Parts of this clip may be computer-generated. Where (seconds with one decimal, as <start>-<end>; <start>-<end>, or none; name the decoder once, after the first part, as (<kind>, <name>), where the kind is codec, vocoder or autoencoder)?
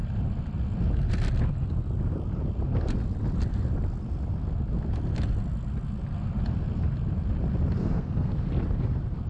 7.8-8.3 (codec, SNAC)